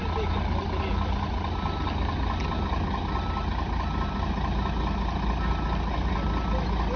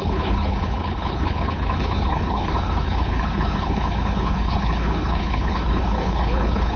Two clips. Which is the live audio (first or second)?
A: first